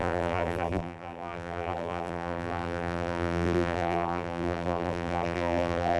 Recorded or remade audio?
remade